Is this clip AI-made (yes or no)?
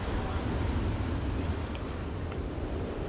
no